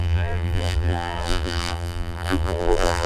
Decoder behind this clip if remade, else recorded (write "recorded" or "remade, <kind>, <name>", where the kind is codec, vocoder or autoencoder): remade, vocoder, BigVGAN v2